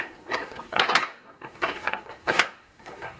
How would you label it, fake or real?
fake